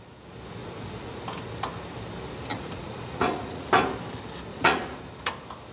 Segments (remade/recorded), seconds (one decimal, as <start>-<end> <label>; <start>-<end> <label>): 0.0-0.6 recorded; 0.6-1.2 remade; 1.2-2.5 recorded; 2.5-3.7 remade; 3.7-4.5 recorded; 4.5-5.0 remade; 5.0-5.7 recorded